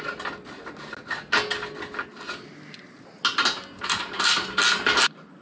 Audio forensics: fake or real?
real